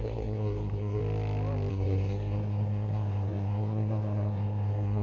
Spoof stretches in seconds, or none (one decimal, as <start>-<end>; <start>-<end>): 0.0-1.0; 1.7-5.0